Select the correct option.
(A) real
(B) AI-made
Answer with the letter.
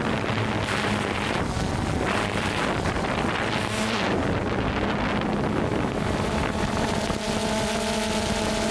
A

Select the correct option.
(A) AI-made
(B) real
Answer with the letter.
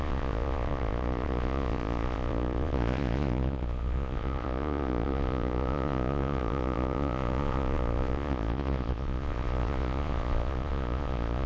A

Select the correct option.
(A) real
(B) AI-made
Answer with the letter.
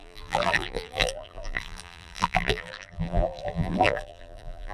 B